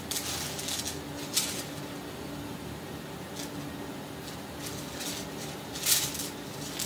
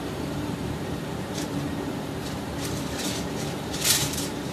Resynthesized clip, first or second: second